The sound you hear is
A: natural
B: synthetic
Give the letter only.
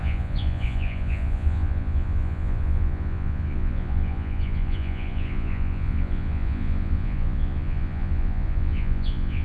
B